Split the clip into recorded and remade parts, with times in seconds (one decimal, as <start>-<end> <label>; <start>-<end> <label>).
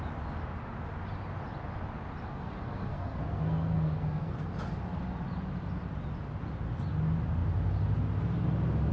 0.0-2.3 recorded; 2.3-4.5 remade; 4.5-8.9 recorded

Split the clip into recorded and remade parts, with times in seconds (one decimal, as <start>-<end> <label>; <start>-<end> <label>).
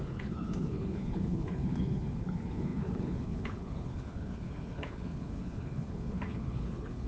0.0-7.1 remade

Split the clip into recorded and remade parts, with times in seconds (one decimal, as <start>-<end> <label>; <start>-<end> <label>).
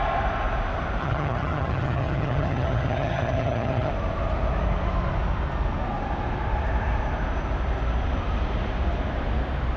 0.0-1.0 recorded; 1.0-3.9 remade; 3.9-9.8 recorded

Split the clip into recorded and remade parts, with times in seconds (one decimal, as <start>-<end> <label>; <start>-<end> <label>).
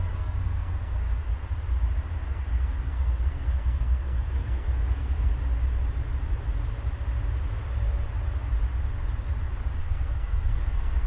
0.0-1.3 remade; 1.3-2.3 recorded; 2.3-5.3 remade; 5.3-9.8 recorded; 9.8-11.1 remade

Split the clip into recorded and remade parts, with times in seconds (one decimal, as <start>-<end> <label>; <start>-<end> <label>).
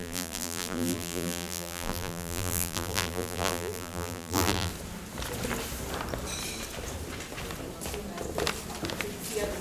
0.0-4.7 remade; 4.7-9.6 recorded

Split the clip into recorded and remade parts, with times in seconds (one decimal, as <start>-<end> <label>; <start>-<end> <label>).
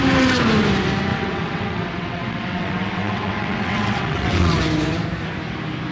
0.0-1.1 recorded; 1.1-4.6 remade; 4.6-5.9 recorded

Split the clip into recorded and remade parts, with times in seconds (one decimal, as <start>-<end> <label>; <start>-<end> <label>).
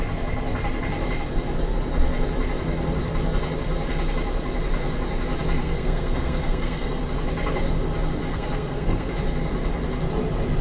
0.0-5.6 recorded; 5.6-7.0 remade; 7.0-8.3 recorded; 8.3-9.1 remade; 9.1-10.6 recorded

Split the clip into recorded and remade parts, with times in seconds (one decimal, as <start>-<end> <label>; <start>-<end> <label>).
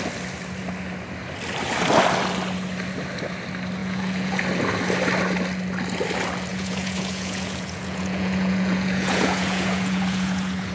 0.0-3.8 recorded; 3.8-4.4 remade; 4.4-6.5 recorded; 6.5-10.7 remade